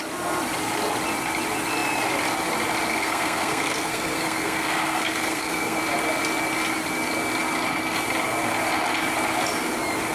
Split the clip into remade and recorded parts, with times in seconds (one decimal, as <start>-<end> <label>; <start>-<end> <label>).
0.0-2.9 recorded; 2.9-5.8 remade; 5.8-10.1 recorded

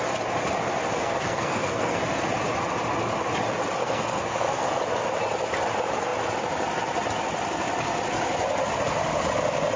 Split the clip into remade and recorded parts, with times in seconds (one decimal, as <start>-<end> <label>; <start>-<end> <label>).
0.0-1.0 recorded; 1.0-2.0 remade; 2.0-3.8 recorded; 3.8-4.8 remade; 4.8-9.8 recorded

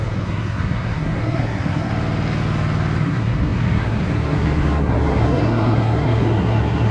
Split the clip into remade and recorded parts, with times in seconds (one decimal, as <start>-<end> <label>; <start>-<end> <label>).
0.0-1.9 remade; 1.9-3.0 recorded; 3.0-6.9 remade

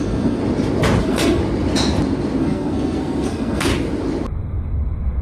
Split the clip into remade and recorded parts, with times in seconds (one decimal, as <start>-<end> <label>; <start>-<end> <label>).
0.0-0.4 remade; 0.4-1.0 recorded; 1.0-1.4 remade; 1.4-2.4 recorded; 2.4-3.7 remade; 3.7-5.2 recorded

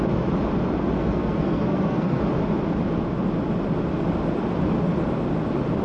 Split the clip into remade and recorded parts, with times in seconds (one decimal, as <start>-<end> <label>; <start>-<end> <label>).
0.0-1.0 recorded; 1.0-2.2 remade; 2.2-5.8 recorded

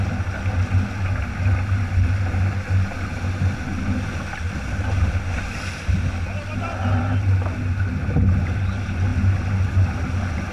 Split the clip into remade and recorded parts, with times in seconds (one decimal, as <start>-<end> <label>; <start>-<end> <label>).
0.0-10.5 recorded

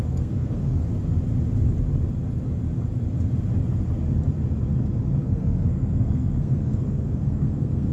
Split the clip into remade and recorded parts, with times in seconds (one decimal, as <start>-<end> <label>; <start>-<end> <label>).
0.0-0.8 remade; 0.8-5.2 recorded; 5.2-7.9 remade

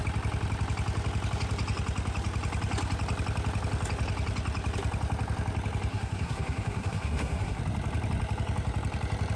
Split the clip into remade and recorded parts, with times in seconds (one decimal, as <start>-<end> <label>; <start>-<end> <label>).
0.0-5.9 recorded; 5.9-7.6 remade; 7.6-9.4 recorded